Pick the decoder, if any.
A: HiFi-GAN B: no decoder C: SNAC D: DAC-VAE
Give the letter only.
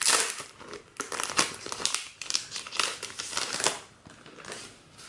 B